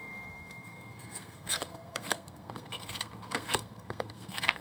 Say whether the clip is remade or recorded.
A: remade